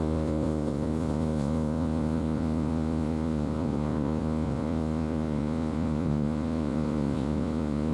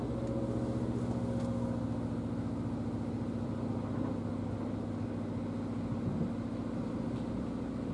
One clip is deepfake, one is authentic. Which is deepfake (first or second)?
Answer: first